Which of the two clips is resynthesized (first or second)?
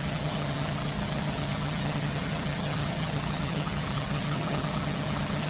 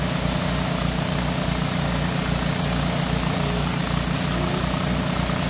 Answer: first